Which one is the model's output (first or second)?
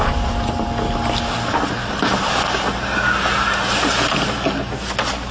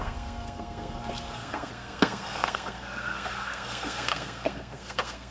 second